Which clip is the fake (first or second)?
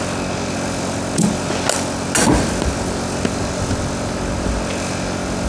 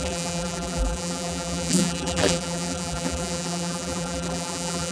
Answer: second